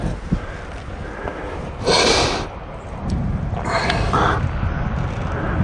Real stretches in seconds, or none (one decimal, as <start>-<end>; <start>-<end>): 0.0-5.6